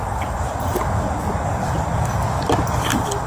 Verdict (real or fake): real